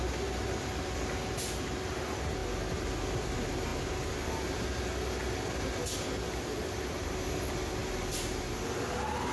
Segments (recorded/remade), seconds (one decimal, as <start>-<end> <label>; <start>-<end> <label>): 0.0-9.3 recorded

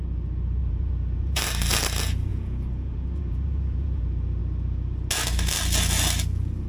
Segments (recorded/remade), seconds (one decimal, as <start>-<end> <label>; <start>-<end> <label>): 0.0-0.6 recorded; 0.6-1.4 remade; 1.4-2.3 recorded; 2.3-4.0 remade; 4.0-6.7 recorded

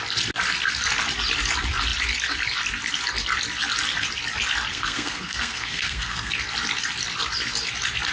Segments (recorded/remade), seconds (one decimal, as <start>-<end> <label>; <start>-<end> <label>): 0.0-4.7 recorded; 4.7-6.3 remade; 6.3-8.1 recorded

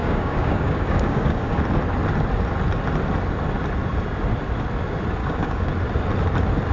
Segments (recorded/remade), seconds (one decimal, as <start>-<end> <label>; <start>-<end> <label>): 0.0-1.6 remade; 1.6-5.2 recorded; 5.2-5.7 remade; 5.7-6.7 recorded